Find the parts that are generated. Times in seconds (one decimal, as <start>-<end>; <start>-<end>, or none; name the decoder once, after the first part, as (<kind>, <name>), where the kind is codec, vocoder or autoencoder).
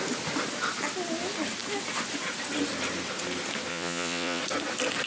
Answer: 3.7-4.4 (vocoder, Vocos)